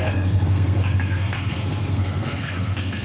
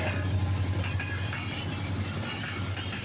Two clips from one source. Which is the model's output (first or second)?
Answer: first